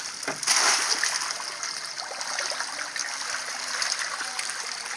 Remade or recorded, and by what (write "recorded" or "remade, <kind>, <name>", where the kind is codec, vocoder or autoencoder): recorded